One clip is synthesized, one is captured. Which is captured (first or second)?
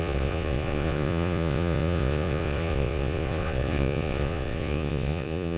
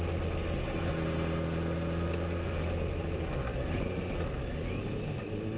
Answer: second